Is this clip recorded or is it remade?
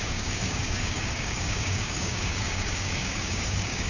remade